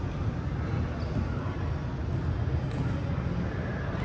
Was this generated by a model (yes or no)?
no